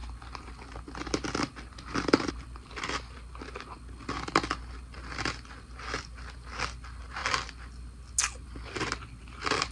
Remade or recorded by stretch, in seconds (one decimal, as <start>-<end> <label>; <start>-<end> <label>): 0.0-9.7 recorded